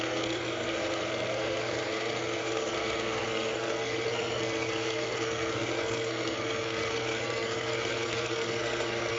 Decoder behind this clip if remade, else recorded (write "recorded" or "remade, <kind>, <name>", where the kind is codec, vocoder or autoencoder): remade, codec, SNAC